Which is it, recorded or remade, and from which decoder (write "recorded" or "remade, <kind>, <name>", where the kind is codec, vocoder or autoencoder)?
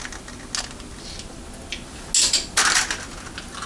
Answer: recorded